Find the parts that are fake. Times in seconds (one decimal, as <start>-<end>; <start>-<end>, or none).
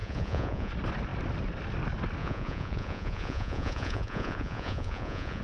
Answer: 0.0-0.7; 2.2-5.4